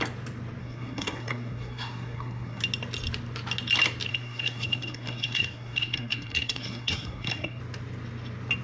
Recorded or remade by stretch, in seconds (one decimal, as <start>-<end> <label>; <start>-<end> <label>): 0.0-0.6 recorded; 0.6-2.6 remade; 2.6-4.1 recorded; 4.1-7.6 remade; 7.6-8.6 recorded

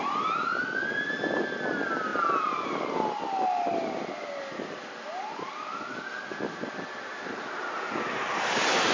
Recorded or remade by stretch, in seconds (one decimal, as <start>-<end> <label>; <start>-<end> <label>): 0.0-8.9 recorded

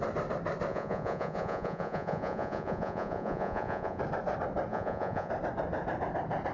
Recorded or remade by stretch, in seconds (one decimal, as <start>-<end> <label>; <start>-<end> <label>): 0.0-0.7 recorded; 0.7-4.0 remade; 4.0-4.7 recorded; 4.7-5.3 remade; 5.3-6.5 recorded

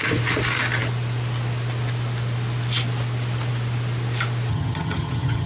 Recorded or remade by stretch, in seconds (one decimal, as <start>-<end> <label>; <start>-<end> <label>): 0.0-4.5 recorded; 4.5-5.5 remade